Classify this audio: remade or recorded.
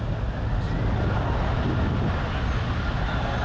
recorded